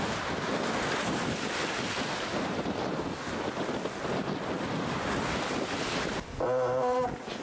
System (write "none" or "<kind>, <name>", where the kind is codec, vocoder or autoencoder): none